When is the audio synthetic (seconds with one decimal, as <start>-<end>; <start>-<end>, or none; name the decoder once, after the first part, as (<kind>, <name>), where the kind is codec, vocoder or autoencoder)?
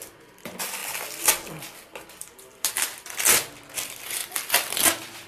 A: none